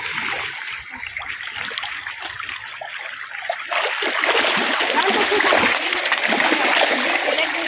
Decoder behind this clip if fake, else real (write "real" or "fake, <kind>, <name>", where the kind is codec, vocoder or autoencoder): real